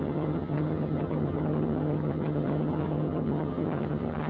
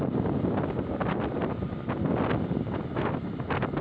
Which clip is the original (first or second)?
second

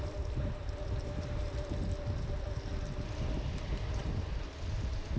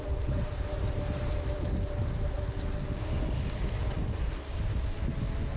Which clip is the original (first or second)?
second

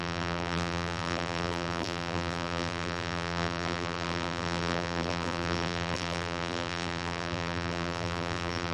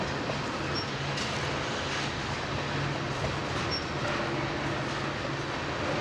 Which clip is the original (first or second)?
second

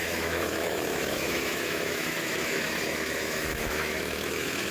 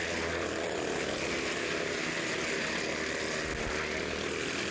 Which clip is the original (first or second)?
second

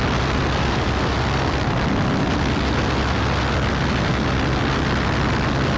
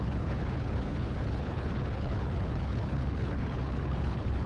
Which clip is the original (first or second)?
first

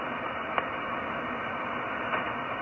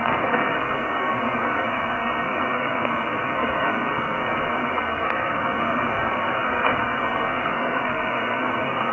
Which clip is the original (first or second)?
first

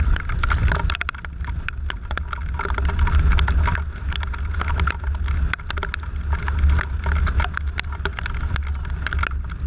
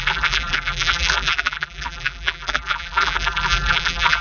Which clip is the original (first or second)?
first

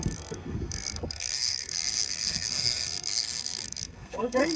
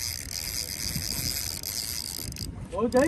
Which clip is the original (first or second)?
second